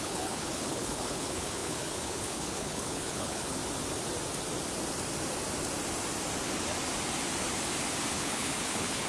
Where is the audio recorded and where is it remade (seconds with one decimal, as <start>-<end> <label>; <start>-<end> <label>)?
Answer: 0.0-3.6 remade; 3.6-8.1 recorded; 8.1-9.1 remade

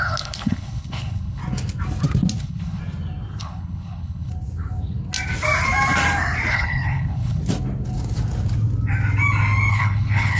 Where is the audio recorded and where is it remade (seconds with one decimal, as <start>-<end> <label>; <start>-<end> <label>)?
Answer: 0.0-1.4 remade; 1.4-2.4 recorded; 2.4-2.8 remade; 2.8-3.4 recorded; 3.4-4.3 remade; 4.3-6.5 recorded; 6.5-7.4 remade; 7.4-9.7 recorded; 9.7-10.4 remade

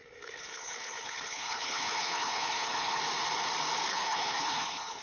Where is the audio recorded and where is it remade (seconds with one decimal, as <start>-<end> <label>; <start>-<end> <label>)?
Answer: 0.0-3.0 remade; 3.0-3.9 recorded; 3.9-5.0 remade

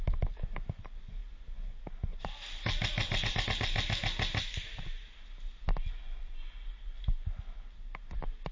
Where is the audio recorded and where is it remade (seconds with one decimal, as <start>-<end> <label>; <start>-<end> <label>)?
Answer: 0.0-8.5 recorded

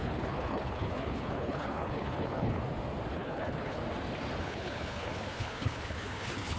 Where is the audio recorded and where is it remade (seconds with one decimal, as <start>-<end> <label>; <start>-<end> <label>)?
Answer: 0.0-2.6 remade; 2.6-3.1 recorded; 3.1-3.8 remade; 3.8-4.4 recorded; 4.4-6.6 remade

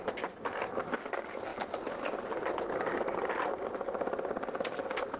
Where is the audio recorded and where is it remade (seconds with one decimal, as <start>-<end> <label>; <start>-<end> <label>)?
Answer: 0.0-5.2 recorded

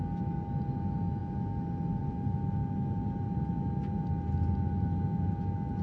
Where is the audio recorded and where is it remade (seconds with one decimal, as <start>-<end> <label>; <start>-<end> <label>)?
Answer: 0.0-5.8 recorded

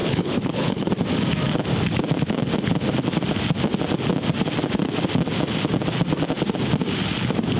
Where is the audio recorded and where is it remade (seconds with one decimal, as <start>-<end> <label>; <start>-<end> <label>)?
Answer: 0.0-0.9 remade; 0.9-7.6 recorded